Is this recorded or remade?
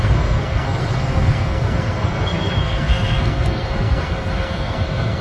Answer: remade